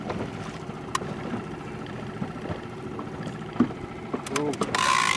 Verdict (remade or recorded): recorded